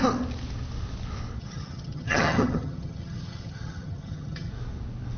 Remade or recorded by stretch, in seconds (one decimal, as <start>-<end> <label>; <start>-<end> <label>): 0.0-1.4 recorded; 1.4-4.5 remade; 4.5-5.2 recorded